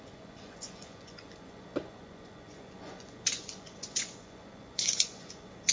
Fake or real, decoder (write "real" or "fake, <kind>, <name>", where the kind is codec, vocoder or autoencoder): fake, vocoder, Vocos